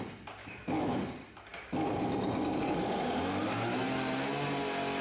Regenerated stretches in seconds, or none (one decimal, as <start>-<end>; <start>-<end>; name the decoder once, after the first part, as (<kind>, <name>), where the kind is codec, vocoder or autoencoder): 0.4-1.0 (autoencoder, DAC-VAE)